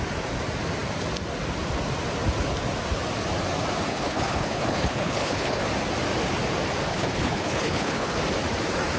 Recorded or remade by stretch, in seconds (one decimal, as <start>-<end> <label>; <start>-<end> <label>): 0.0-3.9 recorded; 3.9-5.6 remade; 5.6-6.9 recorded; 6.9-8.2 remade; 8.2-9.0 recorded